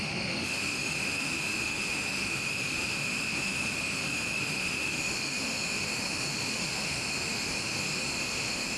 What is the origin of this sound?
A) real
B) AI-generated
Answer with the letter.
B